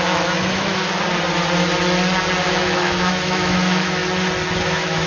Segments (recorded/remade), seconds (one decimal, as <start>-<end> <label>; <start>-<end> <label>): 0.0-0.8 remade; 0.8-2.5 recorded; 2.5-4.0 remade; 4.0-4.6 recorded; 4.6-5.1 remade